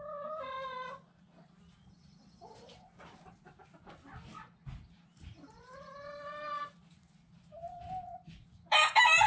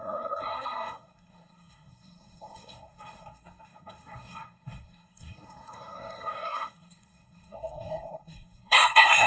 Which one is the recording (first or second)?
first